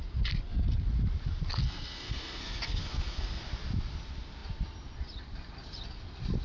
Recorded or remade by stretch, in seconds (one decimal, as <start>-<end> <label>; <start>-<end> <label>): 0.0-1.6 recorded; 1.6-3.4 remade; 3.4-6.4 recorded